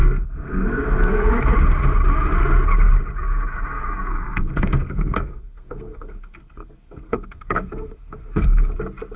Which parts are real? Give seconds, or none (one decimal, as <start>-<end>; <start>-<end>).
1.3-4.1; 8.7-9.2